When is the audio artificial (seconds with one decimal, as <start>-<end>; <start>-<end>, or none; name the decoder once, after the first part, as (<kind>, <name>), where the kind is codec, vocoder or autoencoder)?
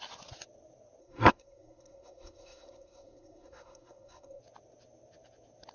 1.0-4.4 (codec, SNAC)